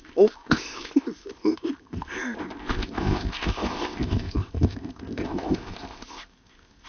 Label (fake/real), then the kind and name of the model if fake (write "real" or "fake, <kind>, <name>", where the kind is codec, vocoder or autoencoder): fake, codec, ZipCodec